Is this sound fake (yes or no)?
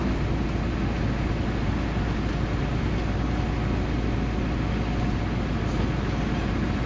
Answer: no